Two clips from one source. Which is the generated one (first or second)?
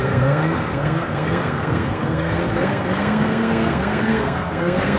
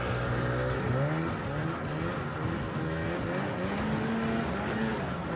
first